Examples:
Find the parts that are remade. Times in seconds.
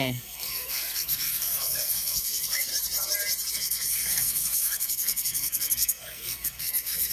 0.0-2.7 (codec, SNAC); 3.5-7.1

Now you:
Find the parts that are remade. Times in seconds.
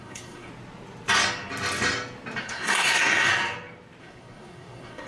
0.0-0.5 (codec, SNAC); 2.4-3.3; 4.0-5.1